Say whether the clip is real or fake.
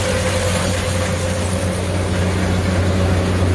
real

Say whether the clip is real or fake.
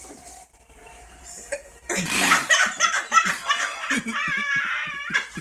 fake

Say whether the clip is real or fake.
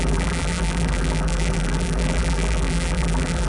fake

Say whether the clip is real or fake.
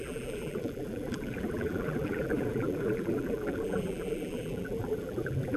fake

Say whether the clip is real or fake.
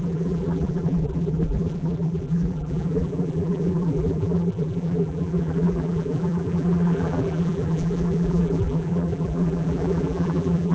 fake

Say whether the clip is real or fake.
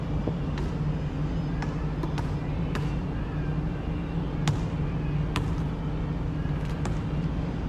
real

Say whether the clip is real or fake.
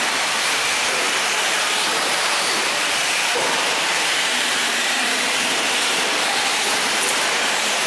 fake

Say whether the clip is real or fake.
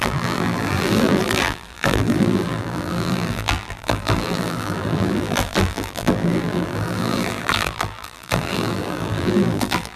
fake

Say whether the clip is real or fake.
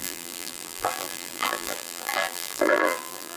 fake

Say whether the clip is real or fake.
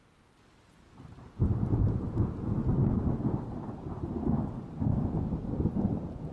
real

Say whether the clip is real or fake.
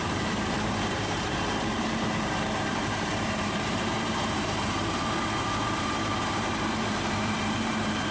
fake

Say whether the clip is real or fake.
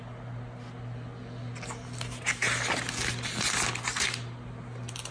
real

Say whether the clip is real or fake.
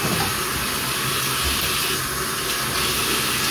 real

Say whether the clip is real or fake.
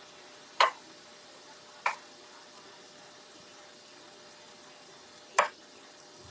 real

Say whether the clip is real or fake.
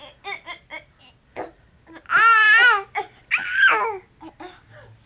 real